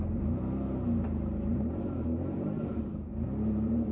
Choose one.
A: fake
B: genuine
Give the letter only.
A